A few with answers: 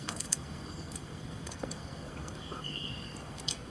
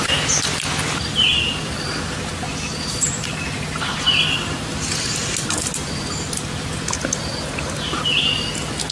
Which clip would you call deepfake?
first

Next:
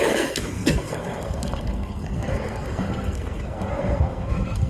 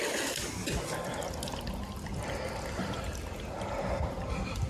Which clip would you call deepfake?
first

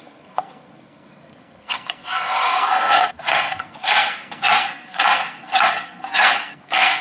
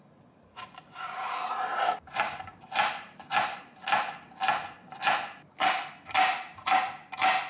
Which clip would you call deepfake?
first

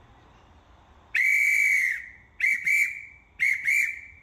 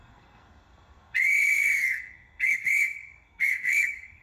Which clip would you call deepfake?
second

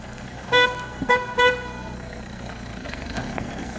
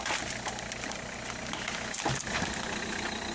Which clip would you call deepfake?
first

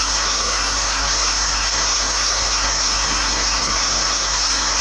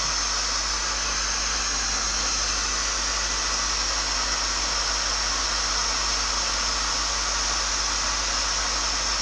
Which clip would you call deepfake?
first